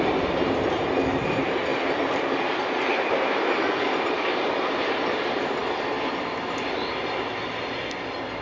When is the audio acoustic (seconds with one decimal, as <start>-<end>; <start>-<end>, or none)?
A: 0.0-8.4